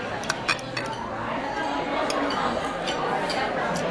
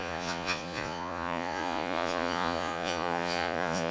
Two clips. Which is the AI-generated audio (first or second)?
second